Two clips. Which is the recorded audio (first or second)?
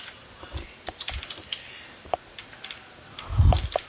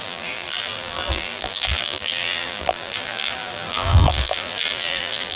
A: first